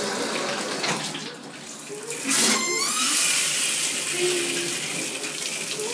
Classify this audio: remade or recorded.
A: recorded